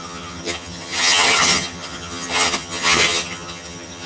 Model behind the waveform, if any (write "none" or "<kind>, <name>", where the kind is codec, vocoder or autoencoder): vocoder, HiFi-GAN